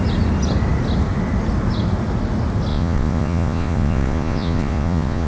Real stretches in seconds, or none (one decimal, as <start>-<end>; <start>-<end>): 0.0-2.7